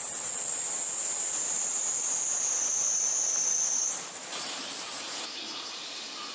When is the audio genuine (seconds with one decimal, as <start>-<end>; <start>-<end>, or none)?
1.8-5.6